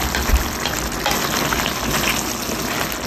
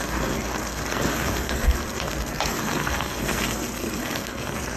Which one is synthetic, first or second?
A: second